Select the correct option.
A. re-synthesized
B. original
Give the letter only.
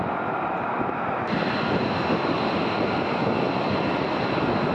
B